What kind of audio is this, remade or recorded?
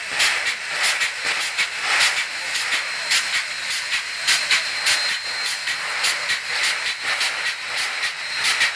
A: recorded